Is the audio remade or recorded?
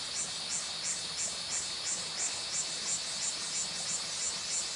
recorded